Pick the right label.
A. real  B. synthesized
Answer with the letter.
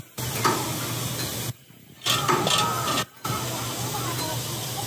A